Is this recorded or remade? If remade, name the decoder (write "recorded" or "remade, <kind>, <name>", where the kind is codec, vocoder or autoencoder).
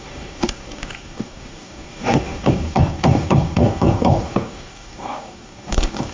remade, codec, DAC